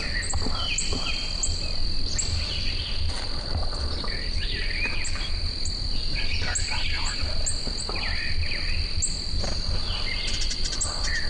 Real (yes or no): yes